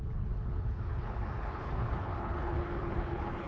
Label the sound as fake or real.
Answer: fake